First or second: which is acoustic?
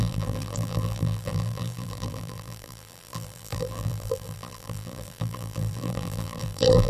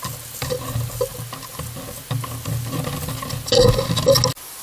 second